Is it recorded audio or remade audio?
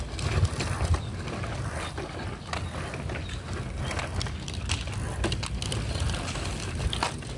recorded